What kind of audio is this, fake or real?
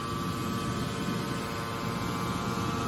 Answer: real